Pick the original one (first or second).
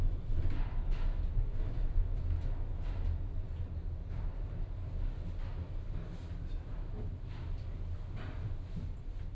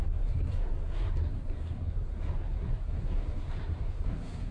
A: first